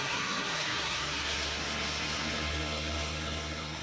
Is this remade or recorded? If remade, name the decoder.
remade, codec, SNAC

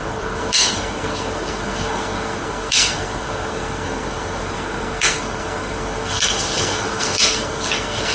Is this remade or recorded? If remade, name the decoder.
remade, codec, SNAC